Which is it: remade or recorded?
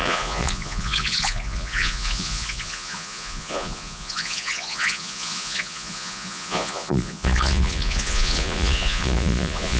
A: remade